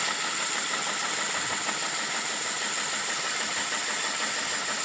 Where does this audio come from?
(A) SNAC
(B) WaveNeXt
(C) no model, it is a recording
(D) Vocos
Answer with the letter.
C